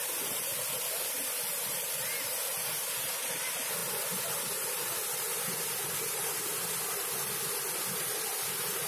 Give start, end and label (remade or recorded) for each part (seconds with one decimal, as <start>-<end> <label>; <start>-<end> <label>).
0.0-8.9 recorded